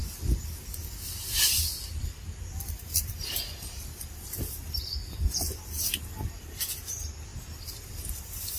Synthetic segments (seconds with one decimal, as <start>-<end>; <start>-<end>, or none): 2.5-8.6